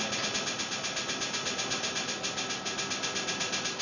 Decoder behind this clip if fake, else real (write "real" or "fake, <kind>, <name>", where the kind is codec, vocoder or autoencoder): real